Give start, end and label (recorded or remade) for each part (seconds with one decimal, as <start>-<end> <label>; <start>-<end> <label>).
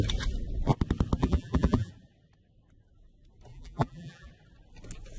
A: 0.0-1.2 recorded; 1.2-1.9 remade; 1.9-3.5 recorded; 3.5-4.3 remade; 4.3-5.2 recorded